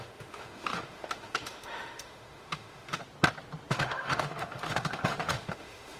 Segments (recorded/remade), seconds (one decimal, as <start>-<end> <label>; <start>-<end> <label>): 0.0-3.0 remade; 3.0-3.7 recorded; 3.7-6.0 remade